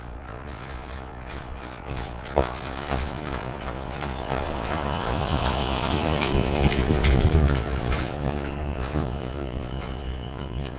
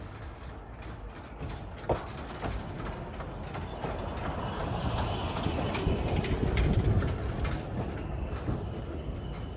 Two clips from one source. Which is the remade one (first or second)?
first